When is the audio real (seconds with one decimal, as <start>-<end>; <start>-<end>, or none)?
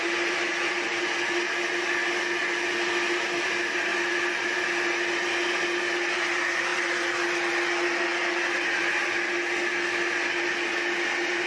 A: 0.0-3.9; 4.6-8.1; 8.6-11.5